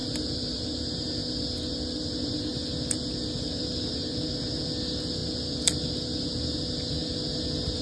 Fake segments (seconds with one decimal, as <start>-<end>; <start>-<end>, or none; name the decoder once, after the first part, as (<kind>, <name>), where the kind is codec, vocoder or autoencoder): none